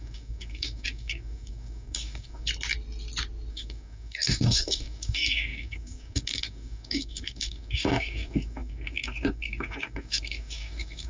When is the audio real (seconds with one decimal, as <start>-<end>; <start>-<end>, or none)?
2.5-3.5